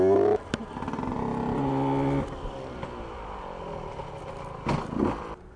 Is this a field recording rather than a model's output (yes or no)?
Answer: yes